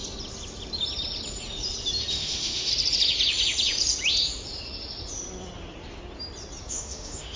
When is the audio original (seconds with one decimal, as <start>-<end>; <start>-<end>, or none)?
0.0-2.1; 2.7-6.7